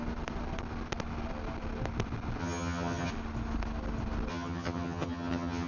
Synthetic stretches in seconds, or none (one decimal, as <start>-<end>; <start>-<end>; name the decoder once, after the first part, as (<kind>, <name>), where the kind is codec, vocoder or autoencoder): 2.4-3.1 (vocoder, HiFi-GAN); 4.3-5.7

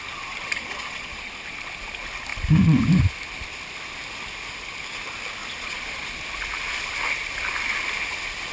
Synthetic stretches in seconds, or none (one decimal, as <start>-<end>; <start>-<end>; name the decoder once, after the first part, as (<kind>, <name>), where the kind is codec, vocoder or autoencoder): 0.6-1.3 (vocoder, Vocos); 5.4-6.2

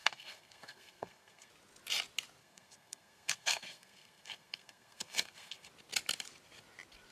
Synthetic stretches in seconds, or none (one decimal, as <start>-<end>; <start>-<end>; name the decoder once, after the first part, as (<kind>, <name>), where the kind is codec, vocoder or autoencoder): 0.0-1.5 (codec, SNAC); 2.4-5.7